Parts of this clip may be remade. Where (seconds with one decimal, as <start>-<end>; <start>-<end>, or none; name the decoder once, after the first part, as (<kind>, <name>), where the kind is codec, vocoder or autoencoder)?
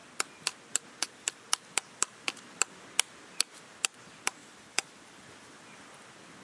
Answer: 4.4-4.9 (vocoder, BigVGAN v2)